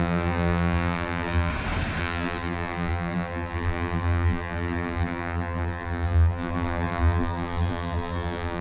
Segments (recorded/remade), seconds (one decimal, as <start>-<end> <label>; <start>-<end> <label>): 0.0-1.5 remade; 1.5-2.0 recorded; 2.0-8.6 remade